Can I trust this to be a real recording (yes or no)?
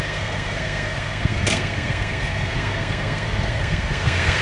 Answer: no